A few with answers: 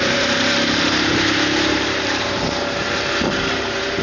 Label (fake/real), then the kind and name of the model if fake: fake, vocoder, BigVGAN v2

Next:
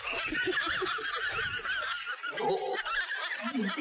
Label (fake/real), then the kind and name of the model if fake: real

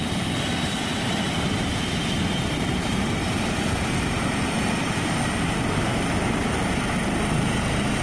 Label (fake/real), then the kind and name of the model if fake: fake, vocoder, BigVGAN v2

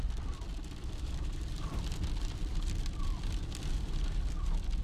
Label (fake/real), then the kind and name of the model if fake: fake, vocoder, BigVGAN v2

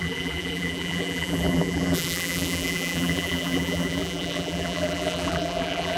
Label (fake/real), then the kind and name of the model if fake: fake, vocoder, BigVGAN v2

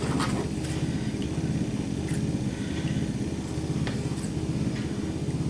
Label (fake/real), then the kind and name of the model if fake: real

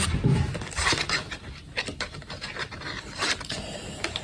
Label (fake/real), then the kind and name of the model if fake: real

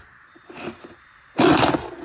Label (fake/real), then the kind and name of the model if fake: real